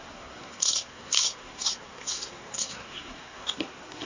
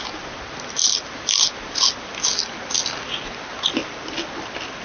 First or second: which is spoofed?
first